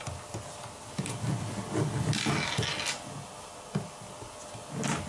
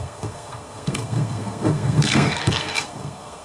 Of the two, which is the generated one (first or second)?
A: second